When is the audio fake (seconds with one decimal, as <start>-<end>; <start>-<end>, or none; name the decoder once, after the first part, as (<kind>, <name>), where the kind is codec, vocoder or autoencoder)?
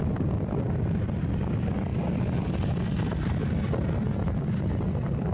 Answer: none